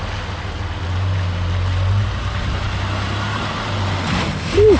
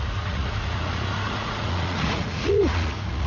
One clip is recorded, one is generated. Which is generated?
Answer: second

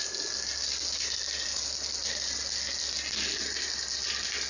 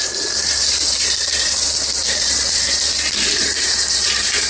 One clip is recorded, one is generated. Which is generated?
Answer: second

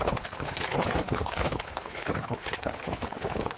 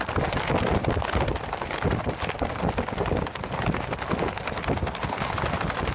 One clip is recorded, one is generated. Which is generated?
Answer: first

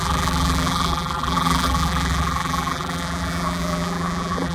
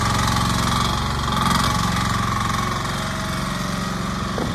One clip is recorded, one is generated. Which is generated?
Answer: first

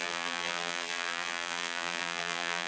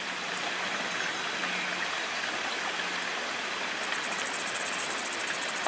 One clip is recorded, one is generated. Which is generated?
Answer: first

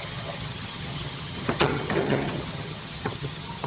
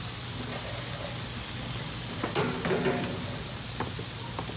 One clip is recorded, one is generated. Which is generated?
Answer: first